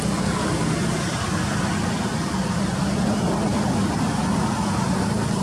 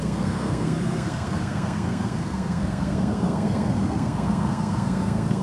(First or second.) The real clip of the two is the first